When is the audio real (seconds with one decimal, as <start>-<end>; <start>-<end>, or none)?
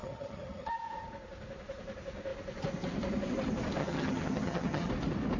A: 0.7-3.8; 4.9-5.4